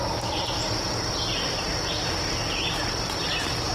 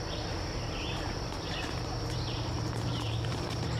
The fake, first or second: second